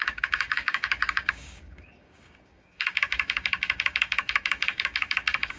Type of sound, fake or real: fake